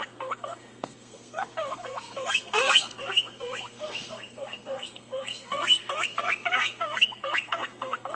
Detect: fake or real fake